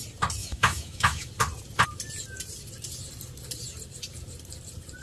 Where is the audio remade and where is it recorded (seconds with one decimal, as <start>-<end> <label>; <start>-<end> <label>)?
0.0-0.4 recorded; 0.4-1.3 remade; 1.3-5.0 recorded

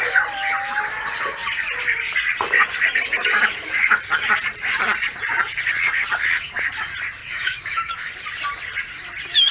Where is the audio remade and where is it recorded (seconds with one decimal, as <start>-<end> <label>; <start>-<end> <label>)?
0.0-3.2 recorded; 3.2-4.0 remade; 4.0-7.2 recorded; 7.2-8.1 remade; 8.1-9.5 recorded

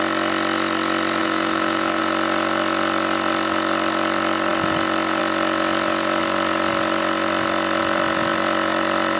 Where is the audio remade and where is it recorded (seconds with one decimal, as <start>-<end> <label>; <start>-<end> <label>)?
0.0-1.2 recorded; 1.2-2.0 remade; 2.0-9.2 recorded

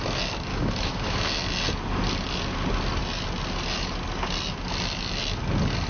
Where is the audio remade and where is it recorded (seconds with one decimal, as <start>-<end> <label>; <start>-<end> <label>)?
0.0-0.5 recorded; 0.5-1.2 remade; 1.2-5.9 recorded

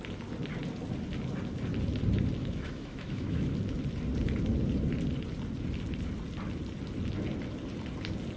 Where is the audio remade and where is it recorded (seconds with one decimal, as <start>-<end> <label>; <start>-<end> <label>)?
0.0-2.4 recorded; 2.4-3.5 remade; 3.5-8.4 recorded

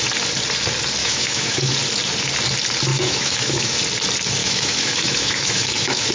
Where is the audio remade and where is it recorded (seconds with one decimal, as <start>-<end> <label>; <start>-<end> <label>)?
0.0-1.0 recorded; 1.0-1.7 remade; 1.7-2.9 recorded; 2.9-3.8 remade; 3.8-4.4 recorded; 4.4-6.1 remade

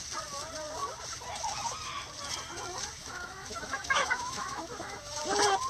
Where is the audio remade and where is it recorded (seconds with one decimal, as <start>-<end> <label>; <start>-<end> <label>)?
0.0-3.0 recorded; 3.0-5.2 remade; 5.2-5.7 recorded

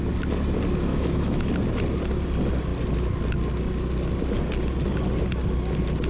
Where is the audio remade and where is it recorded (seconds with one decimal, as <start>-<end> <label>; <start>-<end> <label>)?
0.0-0.9 recorded; 0.9-1.5 remade; 1.5-6.1 recorded